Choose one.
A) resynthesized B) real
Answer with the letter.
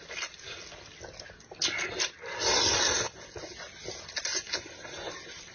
B